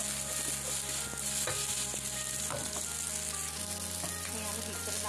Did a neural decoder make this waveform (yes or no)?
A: no